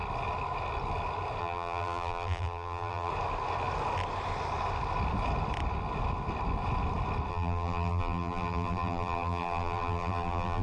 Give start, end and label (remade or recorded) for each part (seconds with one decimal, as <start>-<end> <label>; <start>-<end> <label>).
0.0-1.4 recorded; 1.4-3.1 remade; 3.1-7.3 recorded; 7.3-10.6 remade